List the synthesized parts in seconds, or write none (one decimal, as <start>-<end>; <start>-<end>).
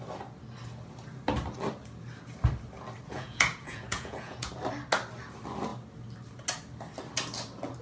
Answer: 3.1-4.5